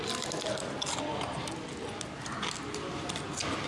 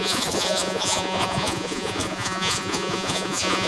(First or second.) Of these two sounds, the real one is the first